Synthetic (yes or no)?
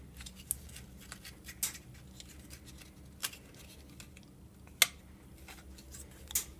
no